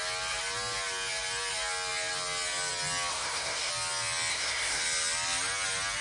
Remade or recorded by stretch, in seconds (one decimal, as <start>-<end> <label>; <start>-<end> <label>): 0.0-3.1 recorded; 3.1-3.7 remade; 3.7-4.3 recorded; 4.3-4.8 remade; 4.8-6.0 recorded